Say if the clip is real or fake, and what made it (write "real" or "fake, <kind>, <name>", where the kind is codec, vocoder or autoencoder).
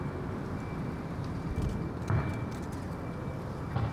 real